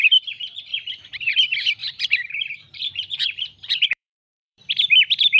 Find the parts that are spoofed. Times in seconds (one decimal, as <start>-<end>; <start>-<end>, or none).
0.7-1.3; 1.8-4.7